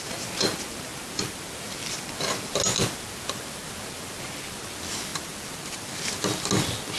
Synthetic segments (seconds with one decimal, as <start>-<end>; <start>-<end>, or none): none